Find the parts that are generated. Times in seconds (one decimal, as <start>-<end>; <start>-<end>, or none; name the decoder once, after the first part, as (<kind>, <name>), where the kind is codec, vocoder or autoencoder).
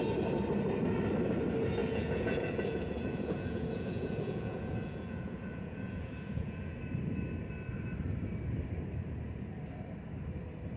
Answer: 1.8-6.8 (vocoder, Vocos)